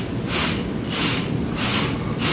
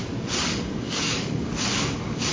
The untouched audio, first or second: first